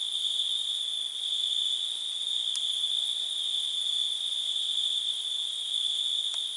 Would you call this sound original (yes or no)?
yes